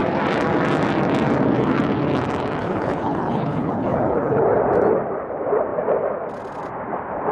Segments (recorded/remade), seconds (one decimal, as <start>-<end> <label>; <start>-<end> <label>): 0.0-2.6 recorded; 2.6-4.4 remade; 4.4-7.3 recorded